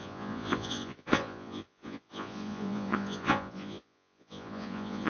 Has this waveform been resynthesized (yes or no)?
yes